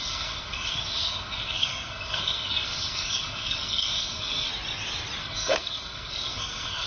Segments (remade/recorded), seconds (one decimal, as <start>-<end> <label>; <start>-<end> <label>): 0.0-4.5 remade; 4.5-5.2 recorded; 5.2-6.9 remade

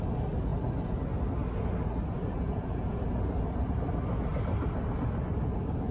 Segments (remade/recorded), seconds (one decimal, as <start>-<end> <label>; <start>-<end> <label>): 0.0-2.2 recorded; 2.2-3.0 remade; 3.0-5.9 recorded

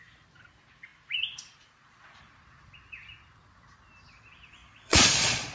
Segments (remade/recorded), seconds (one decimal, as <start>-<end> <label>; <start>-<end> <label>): 0.0-4.6 recorded; 4.6-5.5 remade

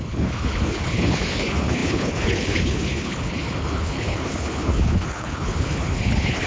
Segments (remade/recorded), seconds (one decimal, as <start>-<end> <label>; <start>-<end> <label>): 0.0-6.5 remade